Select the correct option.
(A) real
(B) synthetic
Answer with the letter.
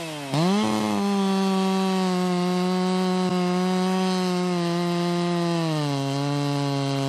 A